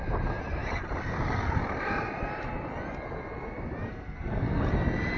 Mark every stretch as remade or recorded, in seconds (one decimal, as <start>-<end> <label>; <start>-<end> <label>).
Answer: 0.0-3.9 recorded; 3.9-4.6 remade; 4.6-5.2 recorded